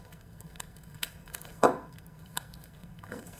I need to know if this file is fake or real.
fake